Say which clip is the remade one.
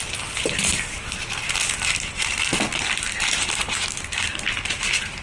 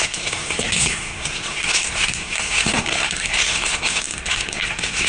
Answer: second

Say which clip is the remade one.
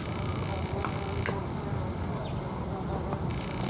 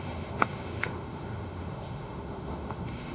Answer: second